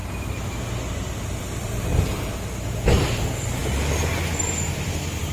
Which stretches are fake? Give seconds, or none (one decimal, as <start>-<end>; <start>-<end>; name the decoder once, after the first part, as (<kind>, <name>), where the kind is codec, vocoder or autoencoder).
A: 1.4-1.9 (vocoder, BigVGAN v2); 3.2-3.6; 4.8-5.3